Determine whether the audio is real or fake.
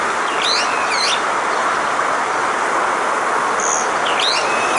real